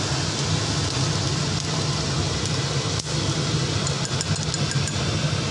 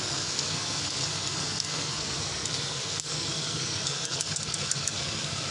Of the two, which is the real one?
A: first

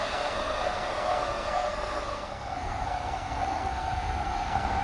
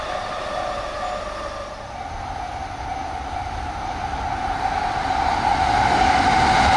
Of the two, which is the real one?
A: second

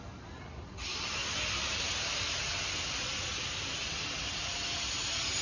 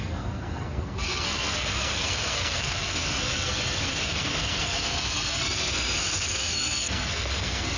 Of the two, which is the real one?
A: first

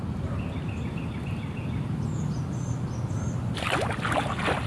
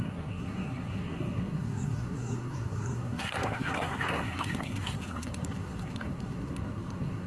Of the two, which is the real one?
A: first